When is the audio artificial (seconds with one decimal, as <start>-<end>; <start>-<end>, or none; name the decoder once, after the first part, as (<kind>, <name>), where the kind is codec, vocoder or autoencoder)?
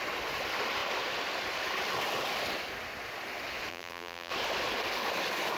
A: 3.7-4.3 (vocoder, BigVGAN v2)